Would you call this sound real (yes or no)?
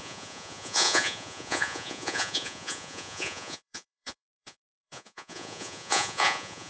no